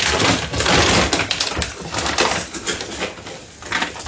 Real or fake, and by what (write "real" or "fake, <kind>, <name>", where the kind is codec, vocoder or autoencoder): real